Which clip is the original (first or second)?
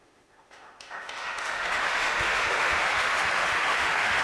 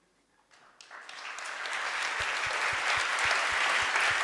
second